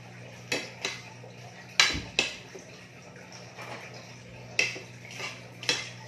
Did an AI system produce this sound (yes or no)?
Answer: no